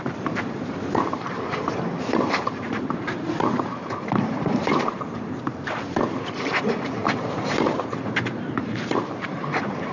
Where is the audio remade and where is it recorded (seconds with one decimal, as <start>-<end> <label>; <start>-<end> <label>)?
0.0-9.9 remade